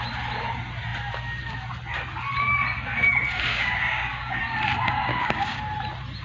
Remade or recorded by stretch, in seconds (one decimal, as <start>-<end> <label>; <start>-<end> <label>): 0.0-3.5 recorded; 3.5-4.4 remade; 4.4-5.1 recorded; 5.1-5.6 remade; 5.6-6.2 recorded